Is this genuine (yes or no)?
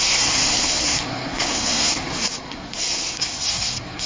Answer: no